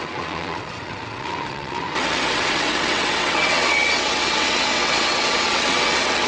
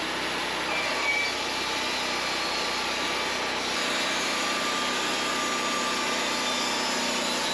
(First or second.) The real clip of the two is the second